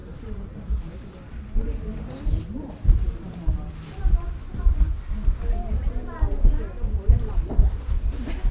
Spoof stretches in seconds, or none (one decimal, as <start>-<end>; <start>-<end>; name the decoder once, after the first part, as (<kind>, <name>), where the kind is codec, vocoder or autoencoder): 0.0-5.1 (vocoder, BigVGAN v2); 7.1-7.8